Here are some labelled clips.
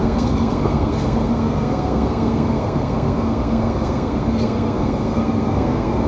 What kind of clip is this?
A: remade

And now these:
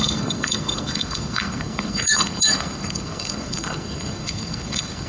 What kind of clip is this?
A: remade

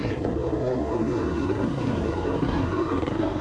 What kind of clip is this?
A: remade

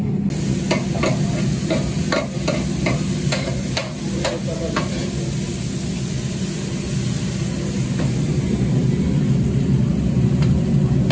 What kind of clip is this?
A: recorded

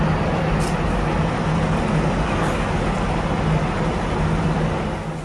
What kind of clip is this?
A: recorded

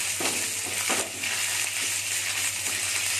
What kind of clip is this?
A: recorded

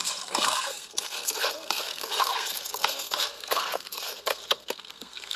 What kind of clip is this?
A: remade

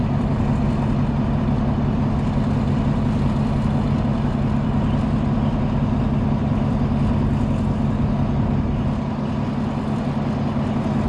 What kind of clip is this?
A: recorded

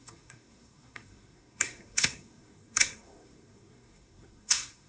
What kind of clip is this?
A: remade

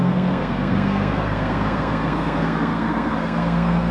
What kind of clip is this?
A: remade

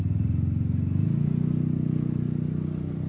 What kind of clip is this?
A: recorded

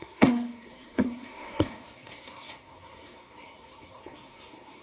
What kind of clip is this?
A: remade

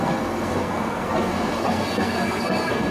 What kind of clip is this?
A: remade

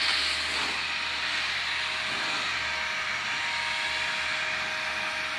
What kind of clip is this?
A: recorded